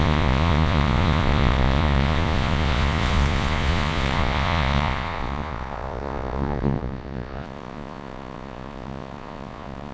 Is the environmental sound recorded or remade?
remade